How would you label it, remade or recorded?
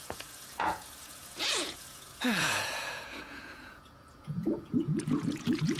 remade